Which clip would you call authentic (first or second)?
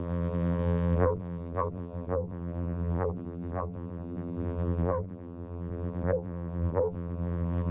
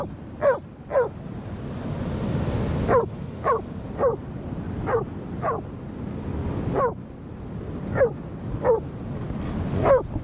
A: second